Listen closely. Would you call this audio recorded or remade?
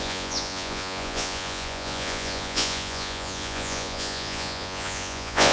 remade